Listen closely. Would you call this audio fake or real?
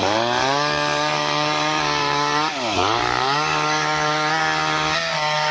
fake